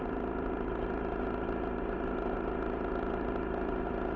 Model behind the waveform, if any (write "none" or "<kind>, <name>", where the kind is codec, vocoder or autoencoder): none